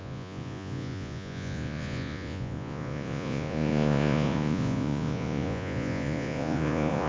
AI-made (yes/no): yes